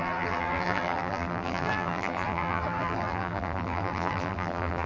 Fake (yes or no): yes